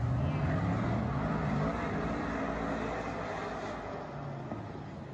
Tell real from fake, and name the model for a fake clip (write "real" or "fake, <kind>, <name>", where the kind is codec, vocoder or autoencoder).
real